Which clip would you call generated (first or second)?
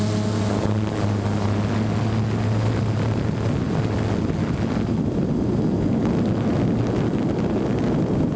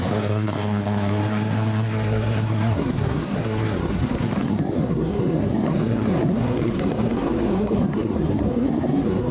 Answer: second